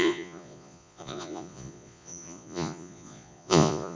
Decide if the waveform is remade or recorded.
remade